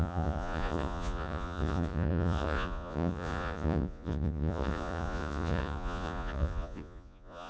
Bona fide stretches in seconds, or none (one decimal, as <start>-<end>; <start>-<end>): none